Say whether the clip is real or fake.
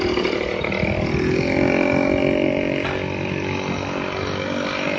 real